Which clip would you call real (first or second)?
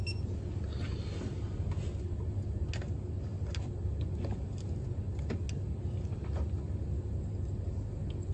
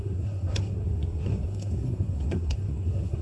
first